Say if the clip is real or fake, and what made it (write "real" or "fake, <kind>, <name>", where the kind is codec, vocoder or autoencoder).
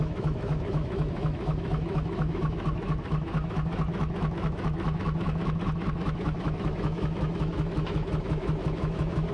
fake, autoencoder, DAC-VAE